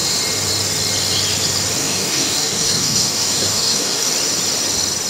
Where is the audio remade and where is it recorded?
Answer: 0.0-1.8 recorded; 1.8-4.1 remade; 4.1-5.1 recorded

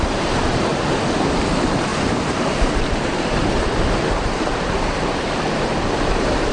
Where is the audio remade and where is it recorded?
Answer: 0.0-0.7 remade; 0.7-1.4 recorded; 1.4-6.5 remade